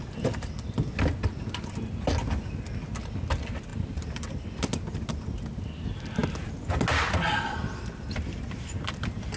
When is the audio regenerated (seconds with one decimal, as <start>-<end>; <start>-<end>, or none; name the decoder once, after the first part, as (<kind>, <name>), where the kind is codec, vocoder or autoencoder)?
3.7-4.2 (vocoder, BigVGAN v2)